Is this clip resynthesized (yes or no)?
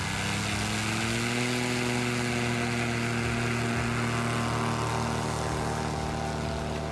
no